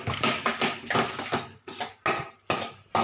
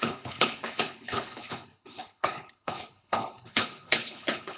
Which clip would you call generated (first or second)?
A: second